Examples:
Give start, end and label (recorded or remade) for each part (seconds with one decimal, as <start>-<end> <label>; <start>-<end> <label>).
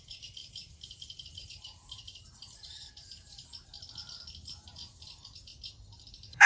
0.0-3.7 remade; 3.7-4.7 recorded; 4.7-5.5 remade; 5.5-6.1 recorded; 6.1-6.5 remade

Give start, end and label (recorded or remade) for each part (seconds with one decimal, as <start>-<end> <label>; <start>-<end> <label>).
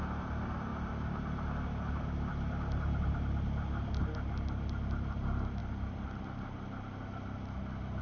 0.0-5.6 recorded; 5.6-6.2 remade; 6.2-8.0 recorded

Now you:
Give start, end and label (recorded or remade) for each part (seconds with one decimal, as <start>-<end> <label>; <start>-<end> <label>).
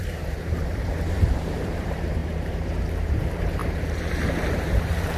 0.0-5.2 remade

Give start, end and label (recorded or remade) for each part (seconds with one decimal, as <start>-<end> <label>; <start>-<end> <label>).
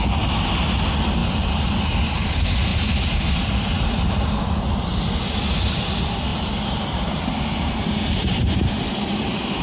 0.0-1.2 recorded; 1.2-1.7 remade; 1.7-2.7 recorded; 2.7-4.4 remade; 4.4-6.3 recorded; 6.3-9.6 remade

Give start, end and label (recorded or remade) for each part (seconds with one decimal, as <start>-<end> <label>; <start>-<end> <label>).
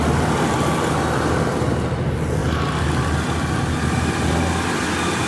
0.0-5.3 recorded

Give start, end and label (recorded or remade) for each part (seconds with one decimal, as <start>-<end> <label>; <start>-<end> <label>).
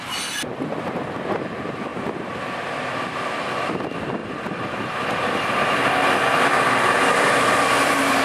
0.0-1.9 recorded; 1.9-3.5 remade; 3.5-4.2 recorded; 4.2-8.2 remade